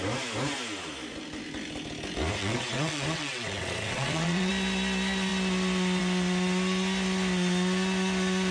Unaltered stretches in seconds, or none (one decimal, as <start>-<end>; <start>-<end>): 0.0-2.4; 4.5-8.5